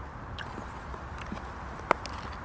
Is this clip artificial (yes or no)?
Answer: no